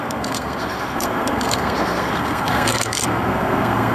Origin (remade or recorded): remade